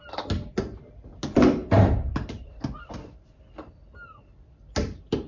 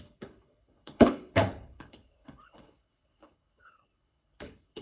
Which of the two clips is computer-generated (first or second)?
second